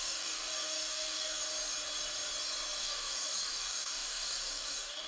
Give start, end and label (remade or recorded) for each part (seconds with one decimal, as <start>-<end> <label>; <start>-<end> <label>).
0.0-1.4 remade; 1.4-2.8 recorded; 2.8-5.1 remade